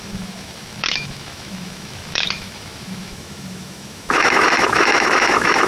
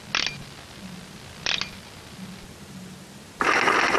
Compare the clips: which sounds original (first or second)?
second